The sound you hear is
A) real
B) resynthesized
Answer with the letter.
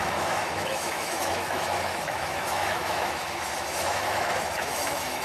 B